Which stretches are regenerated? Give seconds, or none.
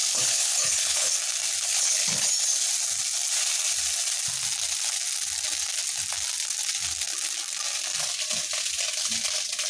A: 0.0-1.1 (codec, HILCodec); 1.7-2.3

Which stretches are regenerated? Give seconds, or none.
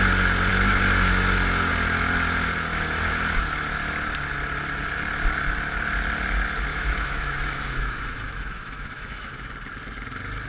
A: 2.7-3.4 (autoencoder, DAC-VAE); 6.7-9.3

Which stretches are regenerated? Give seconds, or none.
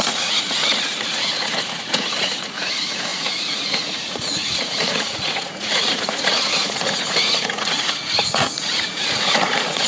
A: 0.0-9.9 (vocoder, Vocos)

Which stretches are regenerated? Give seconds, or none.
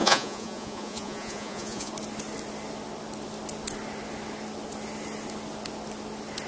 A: 0.0-1.9 (vocoder, Vocos)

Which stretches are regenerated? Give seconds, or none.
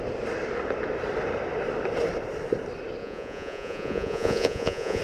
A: 3.0-5.0 (vocoder, Vocos)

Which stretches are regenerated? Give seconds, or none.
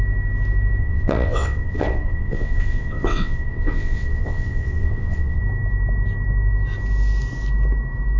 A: 0.8-5.4 (vocoder, WaveNeXt)